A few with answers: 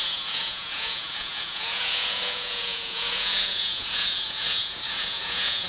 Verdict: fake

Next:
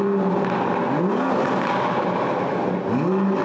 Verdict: real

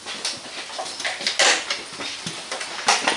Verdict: real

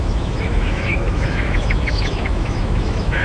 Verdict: fake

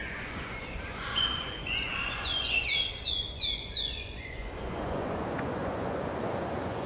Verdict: fake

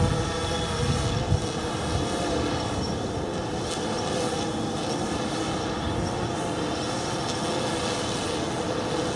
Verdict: real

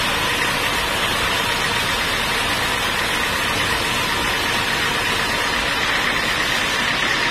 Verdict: real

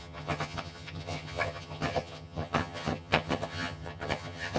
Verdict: fake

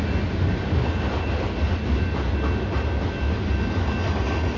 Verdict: real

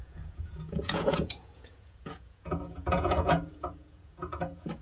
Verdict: fake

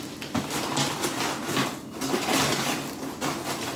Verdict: real